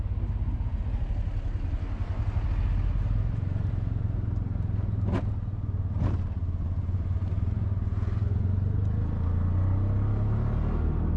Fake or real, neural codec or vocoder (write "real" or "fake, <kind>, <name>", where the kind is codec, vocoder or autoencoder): real